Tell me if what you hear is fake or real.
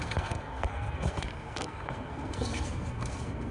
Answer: fake